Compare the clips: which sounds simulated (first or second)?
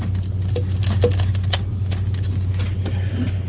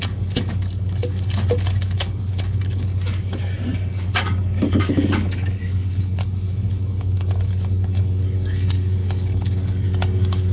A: second